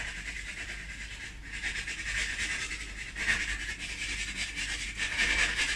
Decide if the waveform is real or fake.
fake